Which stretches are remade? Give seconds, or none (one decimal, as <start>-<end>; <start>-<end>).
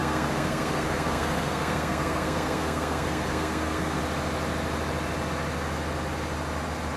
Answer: 0.0-4.0